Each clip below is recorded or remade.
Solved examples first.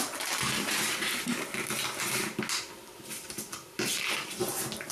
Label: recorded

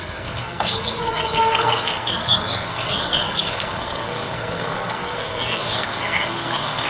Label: remade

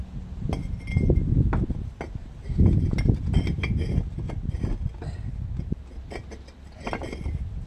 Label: recorded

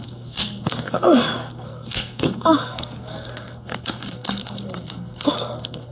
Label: remade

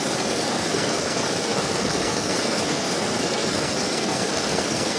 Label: remade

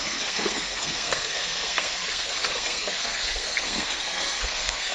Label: remade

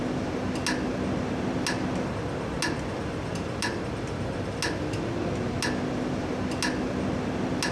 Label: recorded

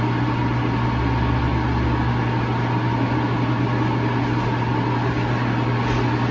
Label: recorded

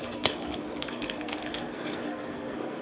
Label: remade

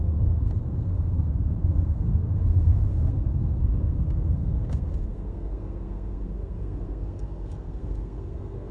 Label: remade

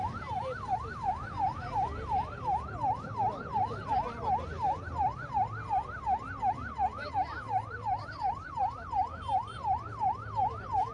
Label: recorded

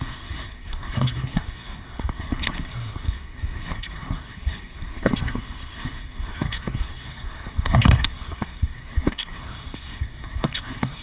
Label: remade